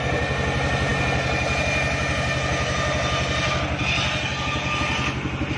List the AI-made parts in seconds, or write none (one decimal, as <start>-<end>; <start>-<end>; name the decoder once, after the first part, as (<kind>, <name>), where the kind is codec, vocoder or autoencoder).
none